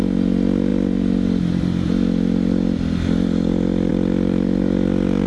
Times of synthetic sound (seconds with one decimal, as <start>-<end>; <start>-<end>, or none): none